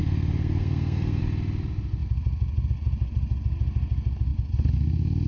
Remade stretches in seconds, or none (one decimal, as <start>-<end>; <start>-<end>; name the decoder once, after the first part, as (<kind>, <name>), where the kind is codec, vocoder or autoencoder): 0.0-1.2 (codec, SNAC)